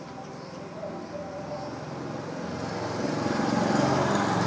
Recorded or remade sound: recorded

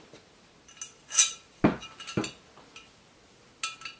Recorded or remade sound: recorded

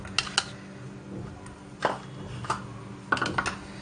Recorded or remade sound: recorded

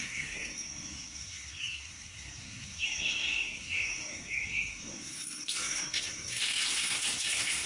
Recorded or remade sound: remade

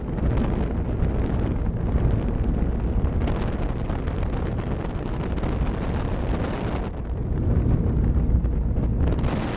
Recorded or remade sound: recorded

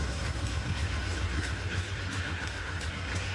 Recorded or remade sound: remade